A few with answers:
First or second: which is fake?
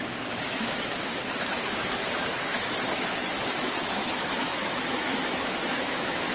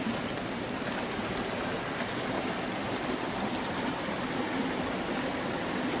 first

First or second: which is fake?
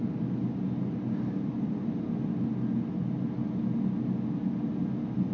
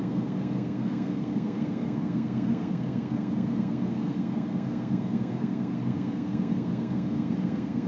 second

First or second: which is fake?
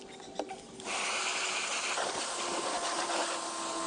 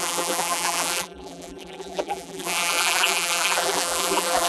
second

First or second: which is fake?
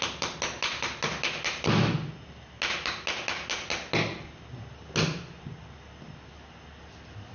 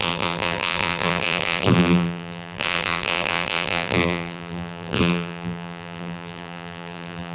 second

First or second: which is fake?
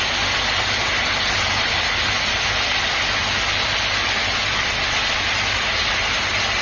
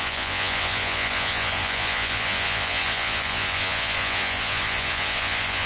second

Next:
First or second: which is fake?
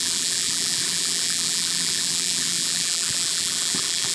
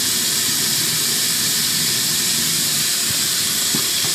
first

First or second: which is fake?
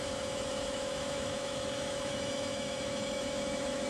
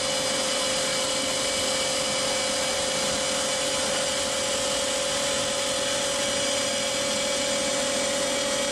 first